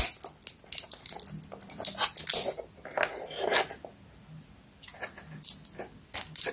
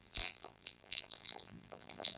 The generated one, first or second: second